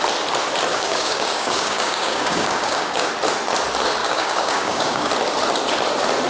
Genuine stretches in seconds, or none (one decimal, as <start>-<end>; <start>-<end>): 0.0-0.7; 3.1-4.0; 5.1-6.3